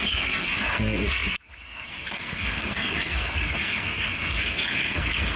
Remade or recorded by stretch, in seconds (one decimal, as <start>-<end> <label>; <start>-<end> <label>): 0.0-5.4 remade